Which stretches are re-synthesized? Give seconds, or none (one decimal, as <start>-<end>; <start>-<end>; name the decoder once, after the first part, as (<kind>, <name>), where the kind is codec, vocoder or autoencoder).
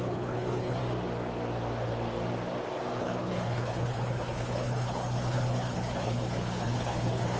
0.0-0.8 (codec, HILCodec); 3.0-7.4